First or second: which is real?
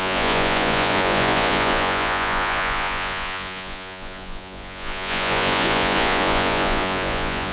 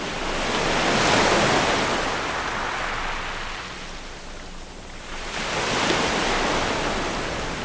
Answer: second